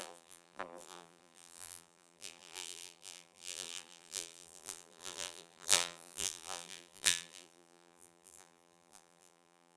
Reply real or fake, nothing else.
fake